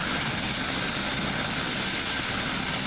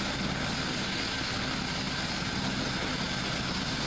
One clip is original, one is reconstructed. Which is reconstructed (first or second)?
first